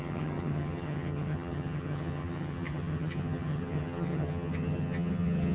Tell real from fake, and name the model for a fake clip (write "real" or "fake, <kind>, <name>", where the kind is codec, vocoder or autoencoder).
fake, vocoder, HiFi-GAN